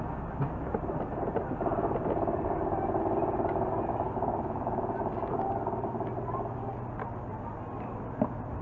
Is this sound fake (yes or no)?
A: no